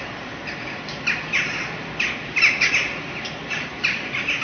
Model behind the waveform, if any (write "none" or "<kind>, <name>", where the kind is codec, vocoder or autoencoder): none